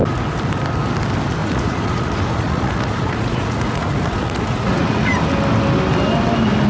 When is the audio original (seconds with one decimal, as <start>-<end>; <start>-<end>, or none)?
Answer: 0.0-1.4; 5.1-6.7